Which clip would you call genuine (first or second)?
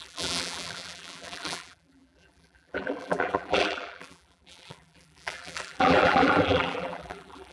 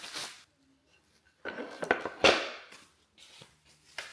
second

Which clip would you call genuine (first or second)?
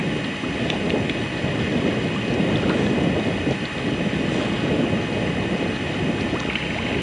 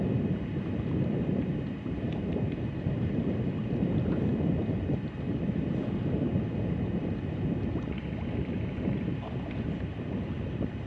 first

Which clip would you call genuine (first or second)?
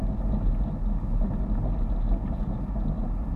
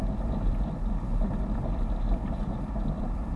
first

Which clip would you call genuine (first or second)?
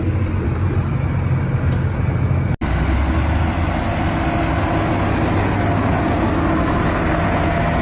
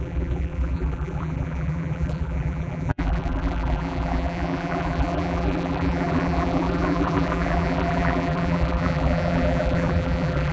first